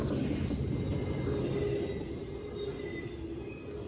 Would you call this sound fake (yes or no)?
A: no